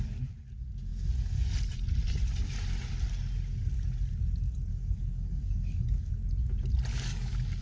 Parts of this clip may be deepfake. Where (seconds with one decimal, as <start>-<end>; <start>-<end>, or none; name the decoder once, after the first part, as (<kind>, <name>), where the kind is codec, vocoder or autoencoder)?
4.7-6.1 (codec, DAC); 6.9-7.6